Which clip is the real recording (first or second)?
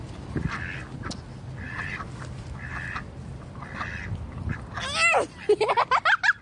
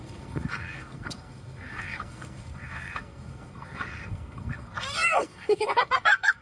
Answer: first